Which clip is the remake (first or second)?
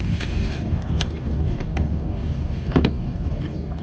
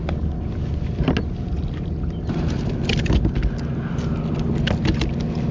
first